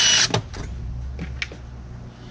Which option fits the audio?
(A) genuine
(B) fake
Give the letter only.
A